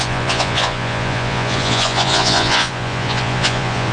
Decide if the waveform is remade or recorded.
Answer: remade